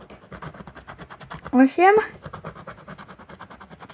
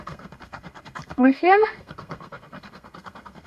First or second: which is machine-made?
second